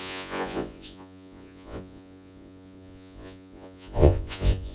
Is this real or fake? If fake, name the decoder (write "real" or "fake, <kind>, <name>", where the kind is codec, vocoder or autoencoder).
fake, vocoder, Vocos